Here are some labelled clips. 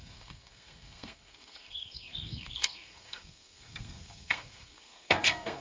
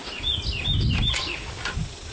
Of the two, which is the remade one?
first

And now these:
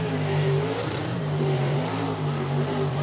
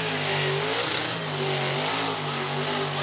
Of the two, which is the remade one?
first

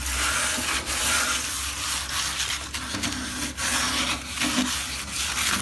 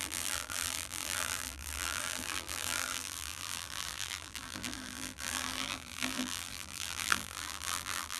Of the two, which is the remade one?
second